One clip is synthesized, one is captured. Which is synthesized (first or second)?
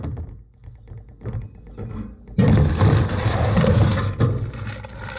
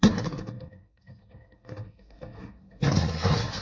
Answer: second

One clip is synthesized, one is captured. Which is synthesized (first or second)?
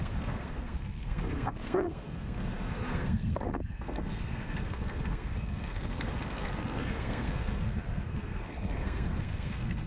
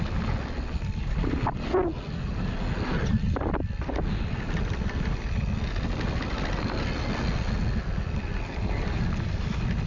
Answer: first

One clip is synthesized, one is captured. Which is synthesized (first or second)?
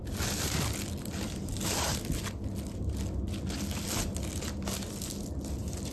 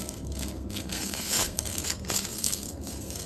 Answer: second